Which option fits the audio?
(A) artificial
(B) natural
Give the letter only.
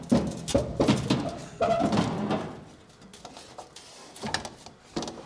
B